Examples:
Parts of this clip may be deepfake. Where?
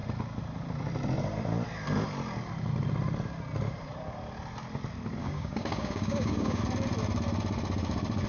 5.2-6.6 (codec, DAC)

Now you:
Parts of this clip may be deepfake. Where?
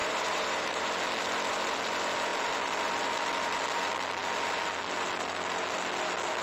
0.0-0.9 (vocoder, BigVGAN v2)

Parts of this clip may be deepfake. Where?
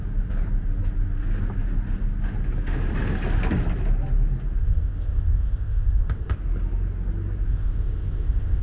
4.6-6.4 (codec, ZipCodec); 7.5-8.6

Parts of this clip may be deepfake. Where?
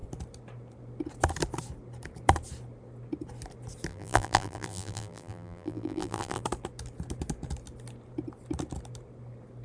3.9-6.4 (vocoder, BigVGAN v2)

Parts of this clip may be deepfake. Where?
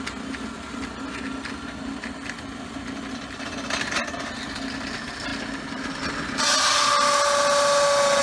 5.3-6.2 (vocoder, BigVGAN v2)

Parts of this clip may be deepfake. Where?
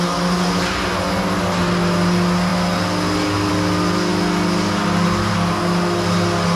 none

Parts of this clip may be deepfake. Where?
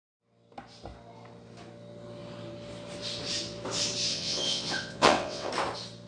4.1-5.5 (vocoder, WaveNeXt)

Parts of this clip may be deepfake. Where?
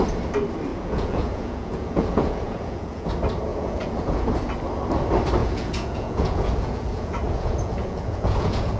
0.7-3.1 (vocoder, Vocos); 3.5-4.3; 5.4-8.8